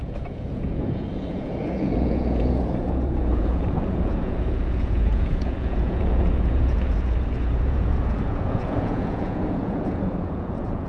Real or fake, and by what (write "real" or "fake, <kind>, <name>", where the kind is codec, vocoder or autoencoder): fake, vocoder, Vocos